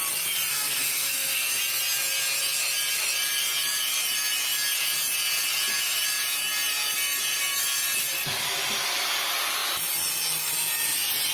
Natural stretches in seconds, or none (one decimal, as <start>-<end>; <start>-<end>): 0.0-0.5; 1.6-11.3